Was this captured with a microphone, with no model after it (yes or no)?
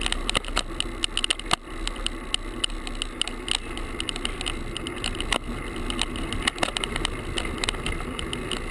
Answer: yes